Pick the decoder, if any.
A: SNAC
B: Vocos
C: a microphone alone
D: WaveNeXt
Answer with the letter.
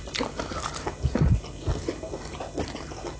C